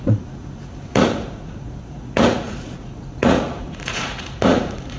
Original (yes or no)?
no